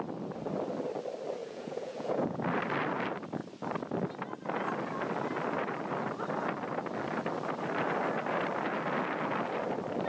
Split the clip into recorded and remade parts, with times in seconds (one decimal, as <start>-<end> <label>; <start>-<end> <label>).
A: 0.0-1.4 recorded; 1.4-2.4 remade; 2.4-10.1 recorded